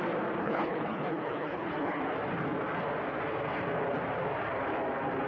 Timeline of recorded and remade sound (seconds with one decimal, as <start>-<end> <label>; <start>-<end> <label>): 0.0-0.4 recorded; 0.4-2.0 remade; 2.0-5.3 recorded